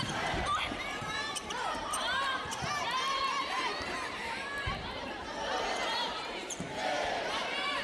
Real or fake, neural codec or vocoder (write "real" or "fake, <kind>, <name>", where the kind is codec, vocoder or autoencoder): fake, vocoder, BigVGAN v2